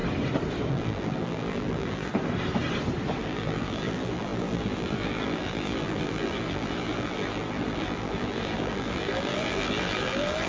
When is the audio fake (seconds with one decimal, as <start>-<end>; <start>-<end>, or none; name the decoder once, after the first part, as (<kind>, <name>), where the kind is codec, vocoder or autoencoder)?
0.7-2.1 (vocoder, BigVGAN v2); 3.2-10.5